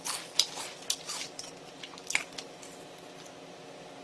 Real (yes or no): yes